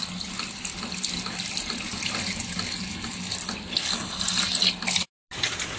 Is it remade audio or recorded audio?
recorded